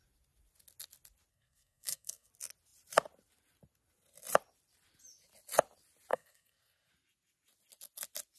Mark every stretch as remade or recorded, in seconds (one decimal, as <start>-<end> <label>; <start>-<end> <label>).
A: 0.0-1.3 recorded; 1.3-2.3 remade; 2.3-6.1 recorded; 6.1-6.9 remade; 6.9-8.4 recorded